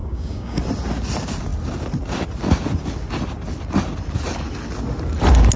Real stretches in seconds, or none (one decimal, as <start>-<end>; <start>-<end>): 0.6-5.6